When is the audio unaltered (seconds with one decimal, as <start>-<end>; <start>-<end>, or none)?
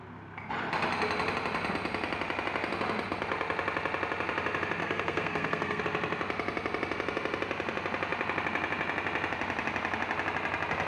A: 0.0-4.8; 5.8-10.9